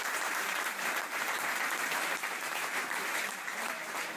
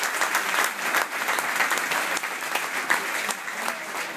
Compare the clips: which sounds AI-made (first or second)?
first